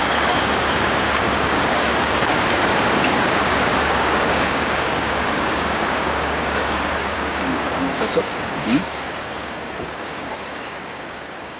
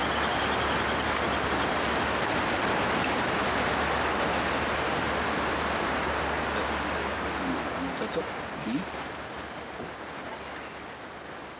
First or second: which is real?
second